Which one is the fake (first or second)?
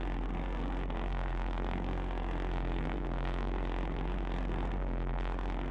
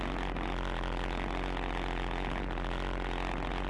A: first